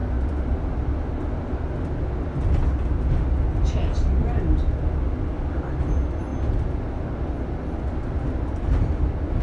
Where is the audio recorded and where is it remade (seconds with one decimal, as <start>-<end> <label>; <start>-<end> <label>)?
0.0-9.4 recorded